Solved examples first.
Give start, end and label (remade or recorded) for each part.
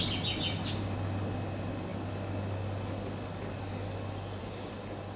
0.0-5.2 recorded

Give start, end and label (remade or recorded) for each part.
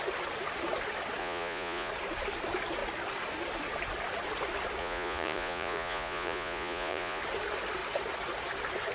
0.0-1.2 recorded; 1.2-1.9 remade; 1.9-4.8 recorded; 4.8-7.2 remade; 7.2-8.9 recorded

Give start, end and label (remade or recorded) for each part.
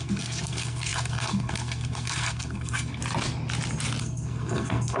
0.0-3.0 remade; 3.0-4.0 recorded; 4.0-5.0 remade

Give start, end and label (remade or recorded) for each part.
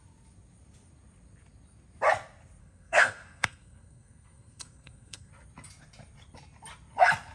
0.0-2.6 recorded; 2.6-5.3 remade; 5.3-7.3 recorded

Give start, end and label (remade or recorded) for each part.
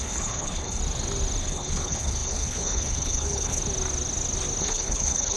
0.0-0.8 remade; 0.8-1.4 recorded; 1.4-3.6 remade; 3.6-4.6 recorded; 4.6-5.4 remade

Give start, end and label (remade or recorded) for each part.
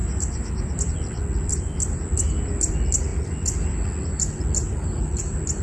0.0-0.9 remade; 0.9-5.6 recorded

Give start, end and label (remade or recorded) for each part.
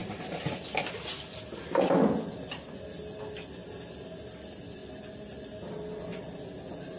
0.0-7.0 recorded